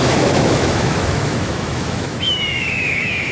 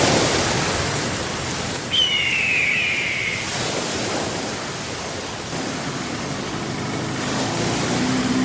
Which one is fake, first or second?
first